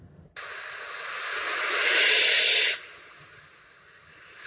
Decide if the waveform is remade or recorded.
recorded